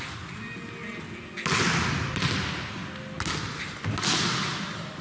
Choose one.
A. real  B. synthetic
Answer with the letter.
A